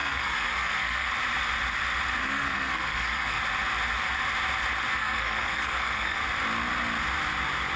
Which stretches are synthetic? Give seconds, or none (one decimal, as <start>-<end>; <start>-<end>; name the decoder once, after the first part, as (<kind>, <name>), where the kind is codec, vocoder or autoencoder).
0.0-1.1 (codec, SNAC); 2.2-3.4; 4.9-6.2